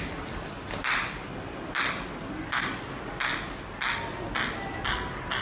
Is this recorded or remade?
recorded